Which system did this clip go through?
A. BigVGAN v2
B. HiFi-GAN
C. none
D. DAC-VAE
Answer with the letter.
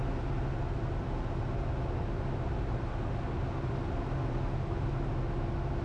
C